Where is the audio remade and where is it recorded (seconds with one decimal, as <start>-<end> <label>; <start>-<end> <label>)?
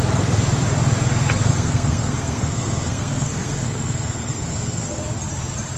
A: 0.0-1.5 recorded; 1.5-5.0 remade; 5.0-5.8 recorded